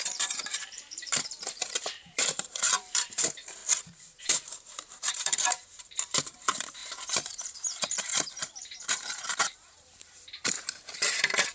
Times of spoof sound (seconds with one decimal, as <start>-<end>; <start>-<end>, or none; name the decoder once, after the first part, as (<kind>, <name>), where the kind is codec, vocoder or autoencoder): 0.0-3.6 (vocoder, BigVGAN v2); 4.2-6.8; 7.3-11.5